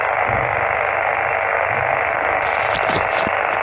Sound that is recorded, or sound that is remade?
recorded